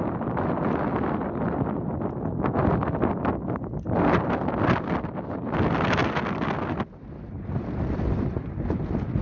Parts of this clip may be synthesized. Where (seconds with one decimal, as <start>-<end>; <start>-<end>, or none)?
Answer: none